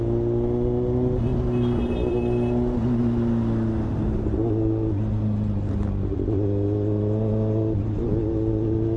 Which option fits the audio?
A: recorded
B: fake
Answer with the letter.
A